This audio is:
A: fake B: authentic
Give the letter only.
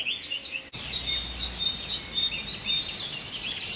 B